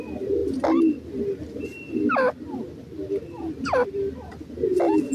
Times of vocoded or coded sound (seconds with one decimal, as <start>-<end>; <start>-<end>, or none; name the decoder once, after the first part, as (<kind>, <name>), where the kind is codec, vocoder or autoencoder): none